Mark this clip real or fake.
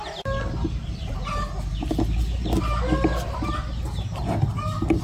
real